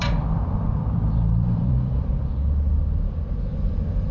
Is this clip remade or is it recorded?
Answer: remade